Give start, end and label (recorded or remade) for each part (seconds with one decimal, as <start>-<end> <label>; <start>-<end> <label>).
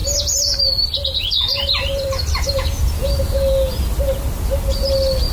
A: 0.0-0.7 remade; 0.7-1.2 recorded; 1.2-2.9 remade; 2.9-5.3 recorded